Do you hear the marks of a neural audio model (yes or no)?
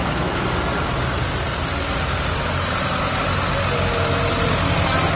no